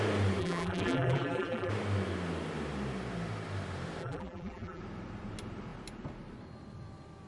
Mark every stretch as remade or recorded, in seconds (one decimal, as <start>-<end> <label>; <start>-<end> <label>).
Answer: 0.0-0.4 recorded; 0.4-1.7 remade; 1.7-4.0 recorded; 4.0-4.8 remade; 4.8-7.3 recorded